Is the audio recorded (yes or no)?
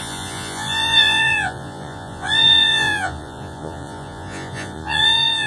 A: no